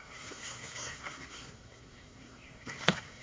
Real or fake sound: fake